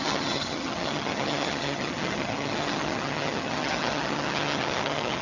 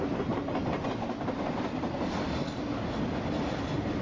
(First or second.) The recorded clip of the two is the second